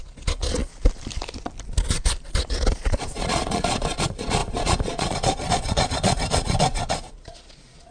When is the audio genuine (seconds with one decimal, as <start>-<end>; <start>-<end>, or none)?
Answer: 0.7-2.5

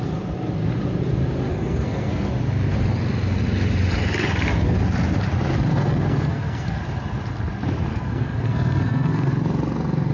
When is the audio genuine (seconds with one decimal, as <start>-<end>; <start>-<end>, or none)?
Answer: 0.0-1.5; 2.3-5.7; 6.8-7.9; 9.3-10.1

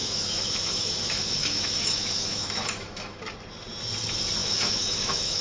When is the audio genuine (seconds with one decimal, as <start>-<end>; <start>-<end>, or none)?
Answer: 3.2-4.4

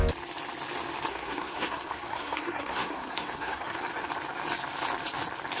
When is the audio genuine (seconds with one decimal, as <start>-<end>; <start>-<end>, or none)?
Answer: 0.0-1.1; 3.8-5.6

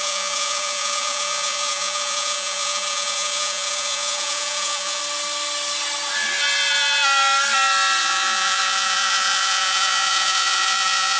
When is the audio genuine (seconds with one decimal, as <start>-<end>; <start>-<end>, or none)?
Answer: 5.0-8.0

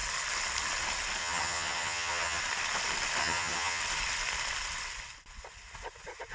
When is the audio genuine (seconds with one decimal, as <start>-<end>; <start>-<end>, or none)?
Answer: 0.0-1.2; 2.4-3.2; 3.8-6.3